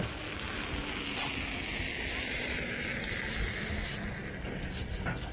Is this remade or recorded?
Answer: recorded